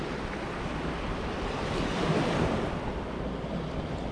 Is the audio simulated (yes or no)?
no